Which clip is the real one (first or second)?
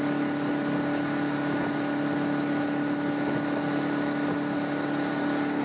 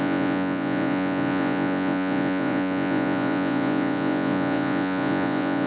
first